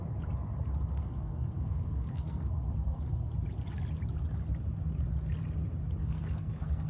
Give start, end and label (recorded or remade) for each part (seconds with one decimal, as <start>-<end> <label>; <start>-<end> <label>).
0.0-0.9 recorded; 0.9-3.3 remade; 3.3-6.0 recorded; 6.0-6.9 remade